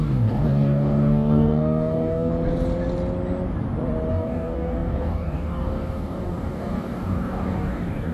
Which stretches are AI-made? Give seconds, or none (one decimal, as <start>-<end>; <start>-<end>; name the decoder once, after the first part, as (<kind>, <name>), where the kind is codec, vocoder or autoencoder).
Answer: 0.0-2.3 (codec, DAC); 4.1-8.1